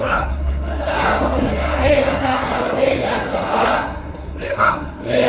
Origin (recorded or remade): remade